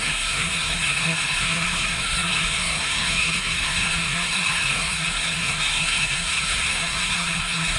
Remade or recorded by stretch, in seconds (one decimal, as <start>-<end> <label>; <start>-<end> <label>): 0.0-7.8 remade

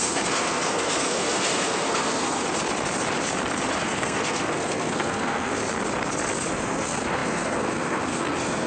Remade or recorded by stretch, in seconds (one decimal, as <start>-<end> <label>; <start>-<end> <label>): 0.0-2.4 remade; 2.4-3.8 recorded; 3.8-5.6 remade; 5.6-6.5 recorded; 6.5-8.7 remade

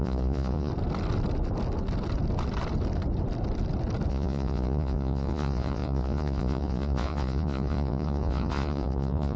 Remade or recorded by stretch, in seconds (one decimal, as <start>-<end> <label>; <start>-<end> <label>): 0.0-0.7 remade; 0.7-4.1 recorded; 4.1-9.4 remade

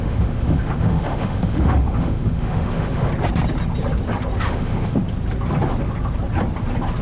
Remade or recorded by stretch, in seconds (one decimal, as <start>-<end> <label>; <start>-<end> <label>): 0.0-3.1 remade; 3.1-4.4 recorded; 4.4-5.0 remade; 5.0-7.0 recorded

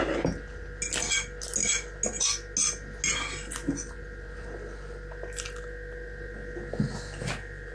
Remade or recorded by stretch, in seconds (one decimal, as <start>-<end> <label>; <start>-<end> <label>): 0.0-7.7 recorded

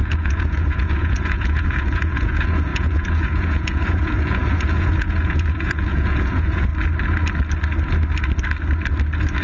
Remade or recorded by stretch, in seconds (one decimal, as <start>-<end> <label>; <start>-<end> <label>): 0.0-6.7 remade; 6.7-9.4 recorded